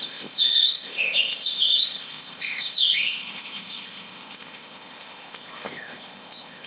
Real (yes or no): no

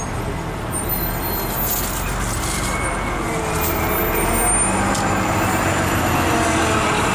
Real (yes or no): yes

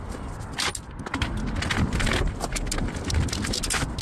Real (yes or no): yes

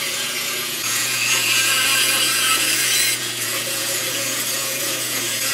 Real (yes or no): no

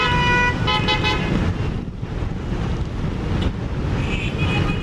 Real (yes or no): yes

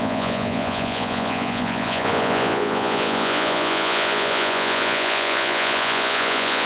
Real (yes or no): no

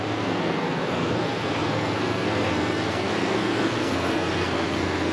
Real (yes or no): no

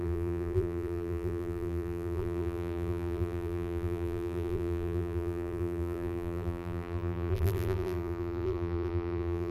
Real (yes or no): no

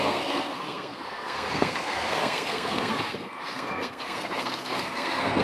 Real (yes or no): no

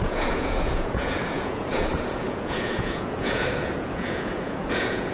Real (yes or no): no